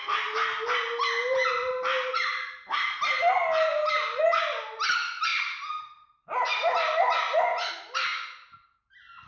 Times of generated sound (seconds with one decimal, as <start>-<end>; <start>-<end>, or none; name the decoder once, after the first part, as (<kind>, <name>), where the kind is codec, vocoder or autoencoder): none